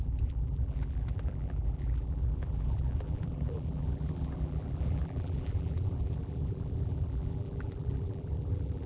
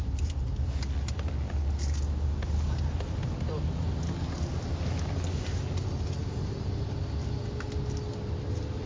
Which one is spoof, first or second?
first